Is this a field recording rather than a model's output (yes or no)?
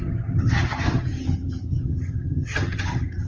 no